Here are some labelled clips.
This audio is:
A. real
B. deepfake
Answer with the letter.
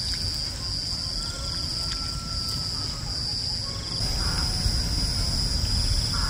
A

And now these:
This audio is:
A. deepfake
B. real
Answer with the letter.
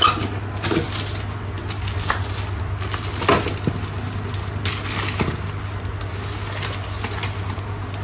B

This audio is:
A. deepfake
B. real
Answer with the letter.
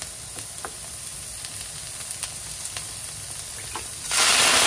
B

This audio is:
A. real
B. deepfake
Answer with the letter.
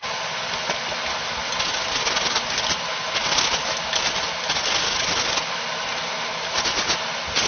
A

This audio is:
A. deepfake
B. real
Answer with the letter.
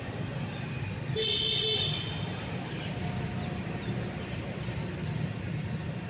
B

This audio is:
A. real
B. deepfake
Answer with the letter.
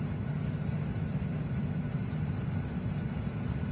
A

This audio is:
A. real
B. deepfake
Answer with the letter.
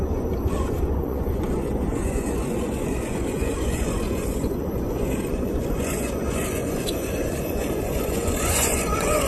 B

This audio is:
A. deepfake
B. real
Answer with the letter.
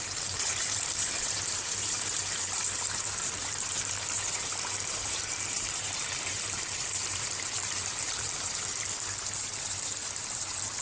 A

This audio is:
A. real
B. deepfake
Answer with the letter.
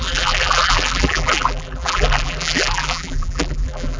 B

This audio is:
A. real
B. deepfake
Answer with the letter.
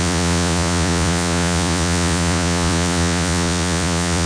B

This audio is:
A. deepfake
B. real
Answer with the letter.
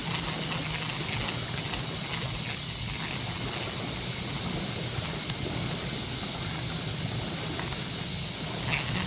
B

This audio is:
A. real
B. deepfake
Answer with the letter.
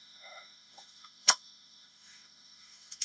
B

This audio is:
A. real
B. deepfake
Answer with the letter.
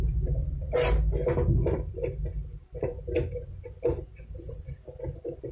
A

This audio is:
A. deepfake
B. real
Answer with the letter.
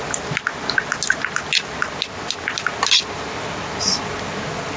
B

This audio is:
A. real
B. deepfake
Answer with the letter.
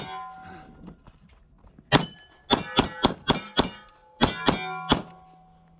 A